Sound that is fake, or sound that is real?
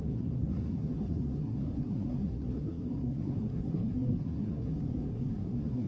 fake